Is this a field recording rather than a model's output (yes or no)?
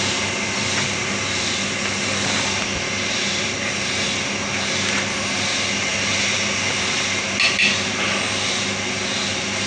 yes